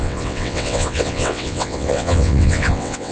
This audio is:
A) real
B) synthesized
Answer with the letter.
B